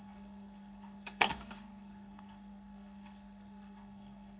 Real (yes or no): no